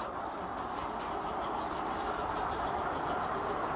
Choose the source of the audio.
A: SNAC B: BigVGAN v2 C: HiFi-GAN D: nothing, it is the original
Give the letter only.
D